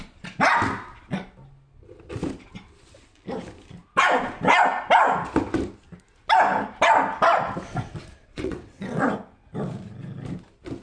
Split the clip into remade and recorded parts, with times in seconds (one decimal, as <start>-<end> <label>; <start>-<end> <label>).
0.0-8.2 recorded; 8.2-9.1 remade; 9.1-10.8 recorded